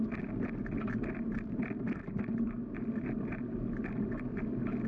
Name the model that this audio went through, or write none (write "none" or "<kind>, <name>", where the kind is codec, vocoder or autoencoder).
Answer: none